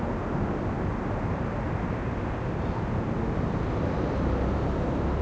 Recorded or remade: recorded